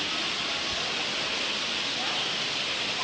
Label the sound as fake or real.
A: real